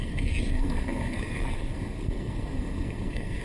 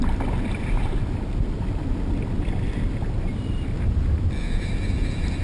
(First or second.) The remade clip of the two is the first